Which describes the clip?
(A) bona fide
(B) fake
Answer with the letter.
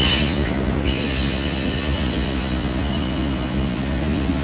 B